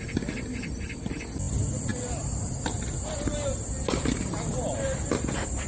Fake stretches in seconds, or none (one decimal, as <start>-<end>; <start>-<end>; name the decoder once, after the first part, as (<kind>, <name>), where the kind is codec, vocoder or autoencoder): none